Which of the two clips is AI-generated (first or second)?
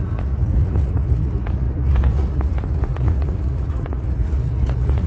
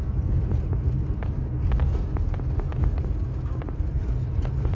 first